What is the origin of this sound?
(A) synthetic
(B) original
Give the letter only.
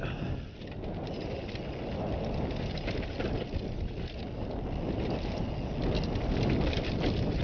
B